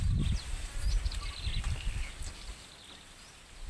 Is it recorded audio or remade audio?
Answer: recorded